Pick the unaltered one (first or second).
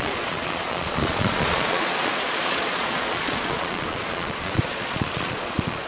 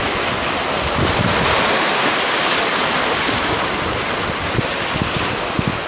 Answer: second